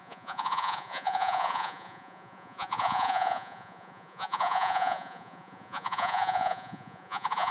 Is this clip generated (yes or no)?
yes